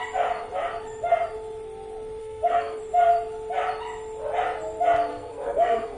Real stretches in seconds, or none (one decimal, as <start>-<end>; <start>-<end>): 0.0-2.2; 2.8-5.1